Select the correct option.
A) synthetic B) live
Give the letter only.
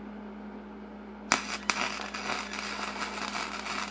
B